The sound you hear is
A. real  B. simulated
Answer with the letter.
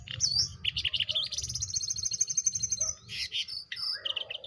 A